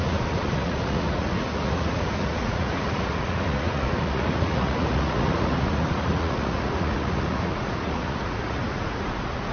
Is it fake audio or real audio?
fake